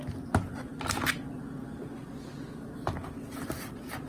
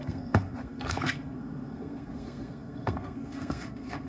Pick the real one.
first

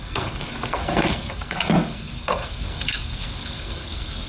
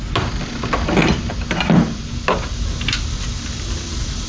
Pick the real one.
second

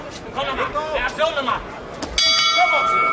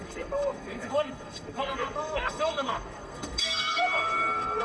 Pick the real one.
first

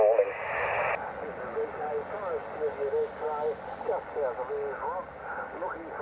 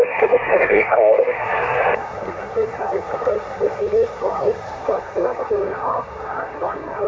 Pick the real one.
first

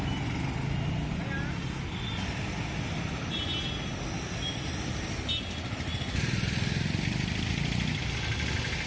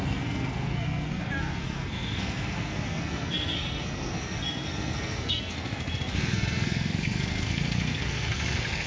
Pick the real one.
first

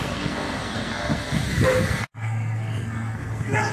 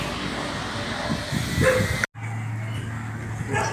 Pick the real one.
second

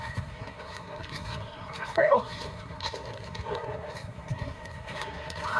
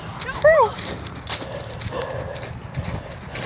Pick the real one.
second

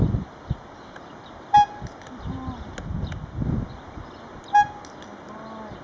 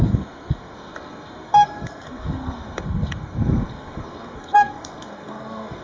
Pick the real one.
first